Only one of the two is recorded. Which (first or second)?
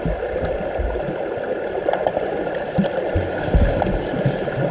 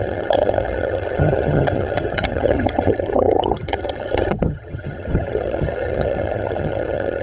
first